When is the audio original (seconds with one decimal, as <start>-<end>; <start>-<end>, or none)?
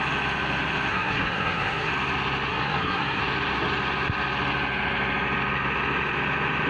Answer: 0.0-0.9; 1.9-2.5; 3.2-6.7